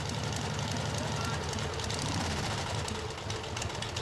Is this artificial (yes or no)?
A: no